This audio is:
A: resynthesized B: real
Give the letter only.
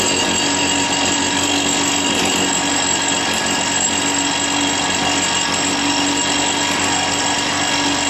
B